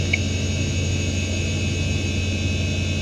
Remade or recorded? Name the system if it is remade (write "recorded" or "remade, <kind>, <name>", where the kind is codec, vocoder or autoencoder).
recorded